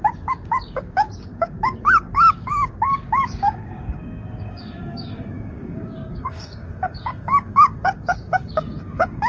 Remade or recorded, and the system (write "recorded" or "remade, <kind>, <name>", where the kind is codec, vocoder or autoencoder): remade, codec, DAC